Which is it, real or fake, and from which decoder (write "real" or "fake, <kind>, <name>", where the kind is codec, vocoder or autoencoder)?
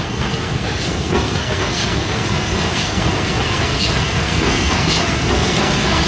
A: fake, codec, SNAC